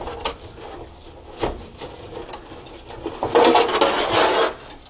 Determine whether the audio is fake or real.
real